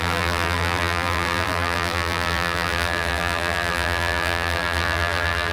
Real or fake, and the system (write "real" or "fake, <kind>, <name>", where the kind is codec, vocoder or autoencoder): fake, vocoder, BigVGAN v2